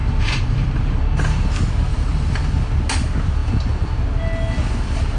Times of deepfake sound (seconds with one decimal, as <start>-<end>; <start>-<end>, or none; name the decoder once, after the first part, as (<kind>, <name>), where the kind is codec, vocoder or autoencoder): 0.0-1.0 (vocoder, BigVGAN v2); 1.9-2.4